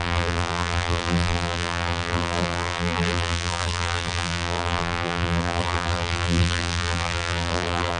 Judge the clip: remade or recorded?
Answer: remade